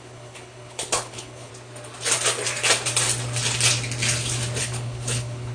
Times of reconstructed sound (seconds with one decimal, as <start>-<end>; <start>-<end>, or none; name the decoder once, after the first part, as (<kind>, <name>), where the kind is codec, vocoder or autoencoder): 0.0-1.5 (codec, HILCodec); 4.6-5.5